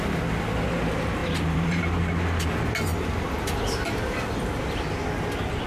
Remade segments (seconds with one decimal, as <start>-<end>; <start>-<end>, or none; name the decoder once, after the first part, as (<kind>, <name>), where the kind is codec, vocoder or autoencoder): 1.2-1.8 (vocoder, BigVGAN v2); 2.9-3.6